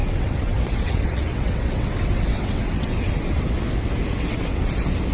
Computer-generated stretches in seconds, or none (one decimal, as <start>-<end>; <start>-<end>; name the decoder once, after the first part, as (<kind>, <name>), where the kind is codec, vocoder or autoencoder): 0.0-3.1 (vocoder, WaveNeXt); 4.1-4.6